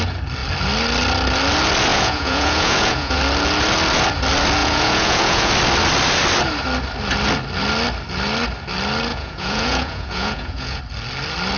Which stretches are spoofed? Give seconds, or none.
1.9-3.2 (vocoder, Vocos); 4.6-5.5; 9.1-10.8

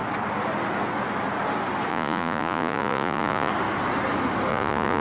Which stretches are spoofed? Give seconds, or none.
1.9-3.5 (vocoder, Vocos); 4.5-5.0

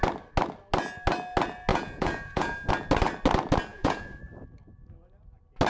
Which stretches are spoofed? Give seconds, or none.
1.7-2.7 (vocoder, Vocos); 3.7-4.2

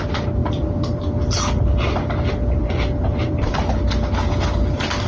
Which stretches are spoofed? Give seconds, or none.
none

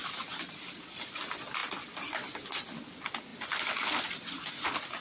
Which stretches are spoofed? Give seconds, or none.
none